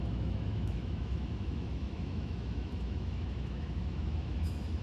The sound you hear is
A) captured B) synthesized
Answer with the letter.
B